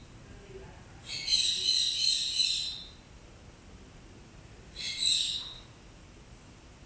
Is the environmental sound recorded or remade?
recorded